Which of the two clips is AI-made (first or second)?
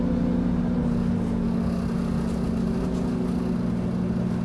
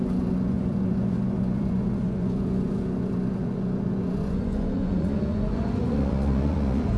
second